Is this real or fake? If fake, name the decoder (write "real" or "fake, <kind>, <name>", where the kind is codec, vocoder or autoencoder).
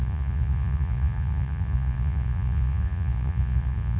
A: fake, vocoder, Vocos